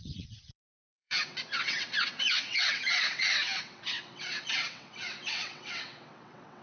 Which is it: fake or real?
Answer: fake